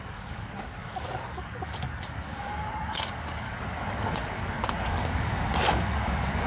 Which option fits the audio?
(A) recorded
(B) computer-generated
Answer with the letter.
B